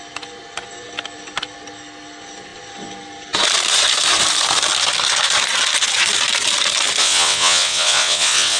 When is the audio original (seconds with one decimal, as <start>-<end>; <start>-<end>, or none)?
0.0-7.0